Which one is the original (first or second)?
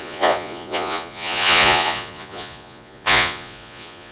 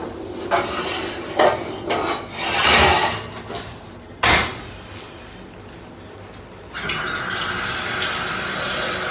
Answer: second